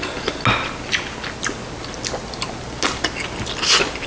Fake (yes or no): no